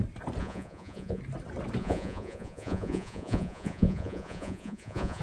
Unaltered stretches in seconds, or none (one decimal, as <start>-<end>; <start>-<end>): 0.0-0.4; 1.2-1.8